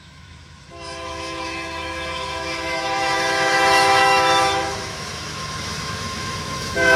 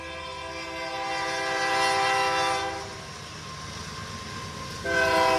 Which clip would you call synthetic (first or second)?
first